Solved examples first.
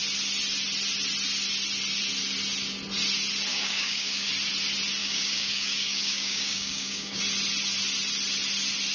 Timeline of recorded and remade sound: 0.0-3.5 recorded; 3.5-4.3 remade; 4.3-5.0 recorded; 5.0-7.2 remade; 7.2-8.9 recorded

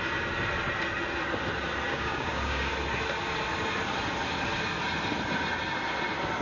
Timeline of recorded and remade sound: 0.0-1.9 recorded; 1.9-2.7 remade; 2.7-6.4 recorded

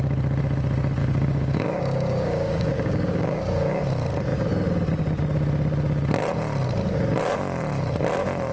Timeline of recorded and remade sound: 0.0-1.0 recorded; 1.0-3.8 remade; 3.8-8.5 recorded

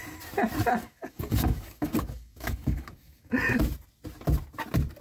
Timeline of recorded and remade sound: 0.0-0.8 recorded; 0.8-3.6 remade; 3.6-5.0 recorded

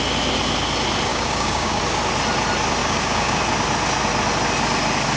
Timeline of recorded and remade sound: 0.0-1.1 recorded; 1.1-1.8 remade; 1.8-2.8 recorded; 2.8-3.4 remade; 3.4-5.2 recorded

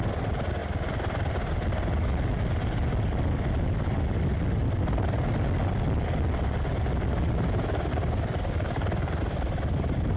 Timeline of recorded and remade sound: 0.0-7.9 recorded; 7.9-9.2 remade; 9.2-10.2 recorded